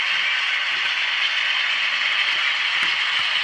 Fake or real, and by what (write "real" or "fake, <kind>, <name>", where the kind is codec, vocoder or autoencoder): real